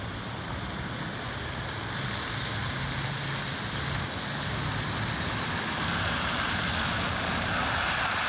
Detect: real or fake real